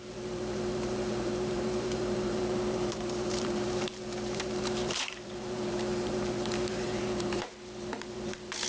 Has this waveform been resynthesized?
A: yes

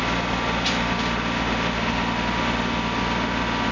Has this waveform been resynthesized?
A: no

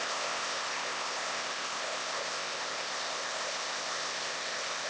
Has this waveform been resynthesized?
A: yes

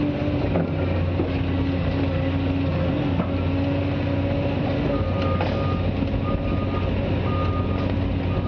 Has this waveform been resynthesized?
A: no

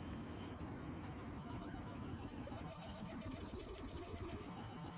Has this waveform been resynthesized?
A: yes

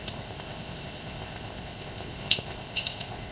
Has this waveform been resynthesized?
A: yes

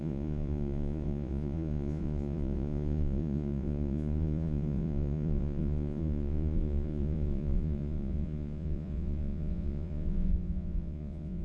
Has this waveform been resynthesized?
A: yes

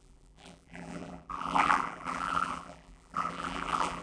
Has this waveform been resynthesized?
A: yes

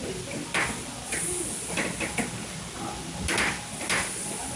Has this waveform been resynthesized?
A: no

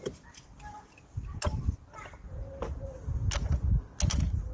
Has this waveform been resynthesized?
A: no